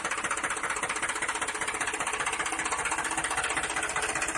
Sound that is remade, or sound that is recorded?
recorded